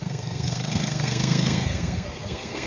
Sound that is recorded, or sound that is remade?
remade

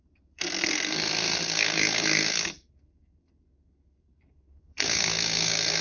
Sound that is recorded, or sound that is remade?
remade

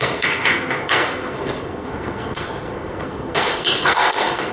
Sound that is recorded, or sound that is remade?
remade